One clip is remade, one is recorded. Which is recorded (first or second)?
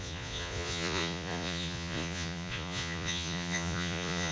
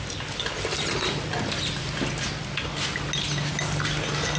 second